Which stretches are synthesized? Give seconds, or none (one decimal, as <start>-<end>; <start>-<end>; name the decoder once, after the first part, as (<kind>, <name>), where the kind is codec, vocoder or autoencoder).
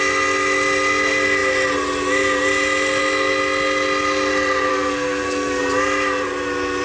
4.7-5.6 (codec, SNAC)